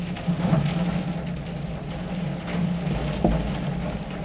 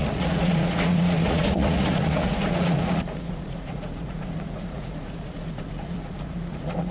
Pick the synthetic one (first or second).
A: second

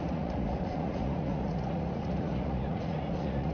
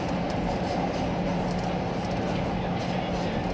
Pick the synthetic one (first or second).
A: first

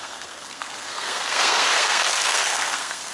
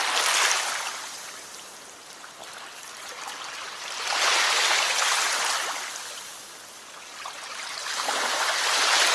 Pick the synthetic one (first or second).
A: first